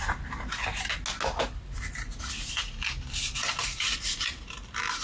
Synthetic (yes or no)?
no